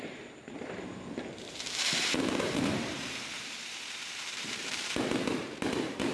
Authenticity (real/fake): fake